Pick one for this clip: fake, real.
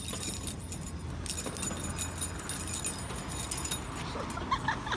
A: real